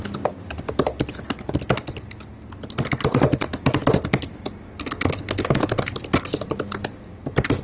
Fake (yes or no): no